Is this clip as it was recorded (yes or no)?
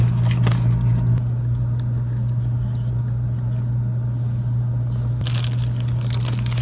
yes